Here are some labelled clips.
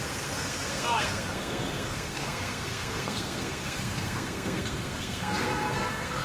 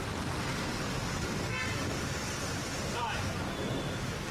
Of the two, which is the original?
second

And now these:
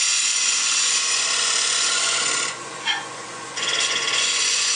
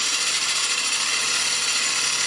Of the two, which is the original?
second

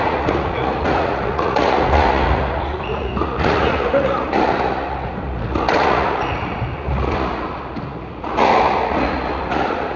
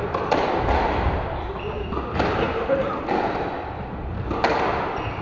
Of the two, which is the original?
second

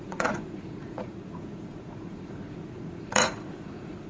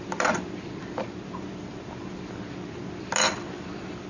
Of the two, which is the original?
second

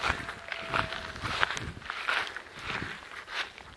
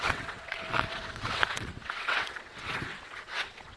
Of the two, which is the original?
first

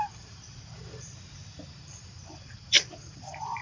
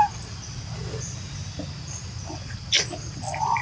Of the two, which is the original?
second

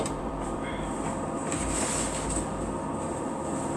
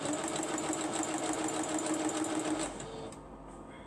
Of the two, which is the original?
second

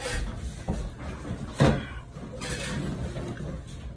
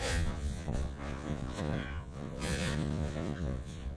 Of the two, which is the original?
first